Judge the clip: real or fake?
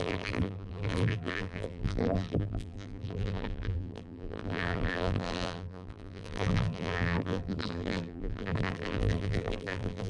fake